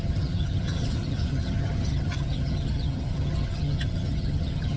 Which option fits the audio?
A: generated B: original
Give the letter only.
A